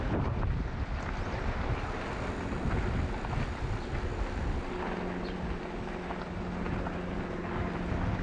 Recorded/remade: recorded